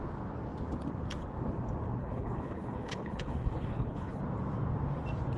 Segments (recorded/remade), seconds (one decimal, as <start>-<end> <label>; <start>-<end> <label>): 0.0-2.0 recorded; 2.0-4.2 remade; 4.2-5.4 recorded